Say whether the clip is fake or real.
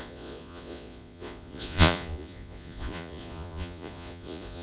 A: fake